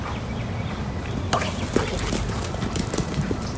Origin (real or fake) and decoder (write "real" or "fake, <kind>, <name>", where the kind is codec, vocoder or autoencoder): real